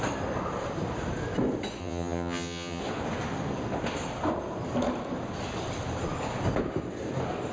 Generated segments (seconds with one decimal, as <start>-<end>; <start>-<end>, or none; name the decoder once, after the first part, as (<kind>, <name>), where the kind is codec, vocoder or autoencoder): 1.8-2.8 (vocoder, HiFi-GAN)